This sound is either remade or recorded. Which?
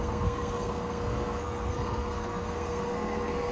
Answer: remade